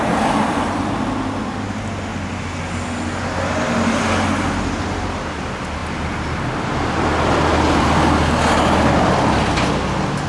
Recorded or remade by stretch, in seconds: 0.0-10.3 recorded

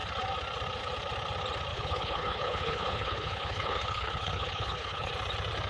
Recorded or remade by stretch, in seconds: 0.0-1.7 recorded; 1.7-5.1 remade; 5.1-5.7 recorded

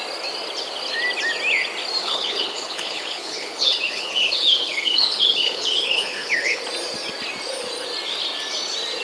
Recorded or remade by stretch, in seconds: 0.0-2.0 recorded; 2.0-6.6 remade; 6.6-9.0 recorded